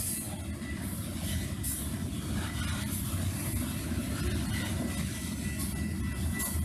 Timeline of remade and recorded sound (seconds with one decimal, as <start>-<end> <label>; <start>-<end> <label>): 0.0-1.1 recorded; 1.1-5.1 remade; 5.1-6.6 recorded